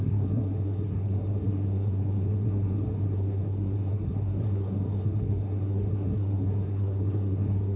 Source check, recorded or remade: remade